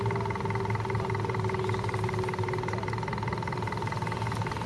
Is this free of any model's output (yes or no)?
yes